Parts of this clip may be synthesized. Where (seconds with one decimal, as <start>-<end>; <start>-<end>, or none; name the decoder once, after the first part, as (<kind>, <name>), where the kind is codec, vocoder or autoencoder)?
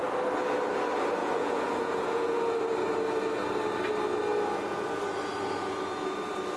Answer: 1.2-2.4 (vocoder, Vocos)